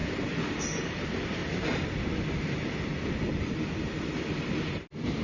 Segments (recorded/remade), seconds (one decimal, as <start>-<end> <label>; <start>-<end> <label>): 0.0-0.8 recorded; 0.8-1.4 remade; 1.4-4.4 recorded; 4.4-5.2 remade